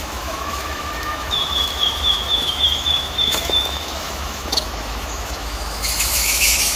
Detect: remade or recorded remade